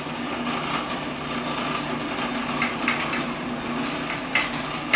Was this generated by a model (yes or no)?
no